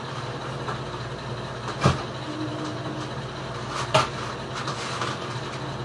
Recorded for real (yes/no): yes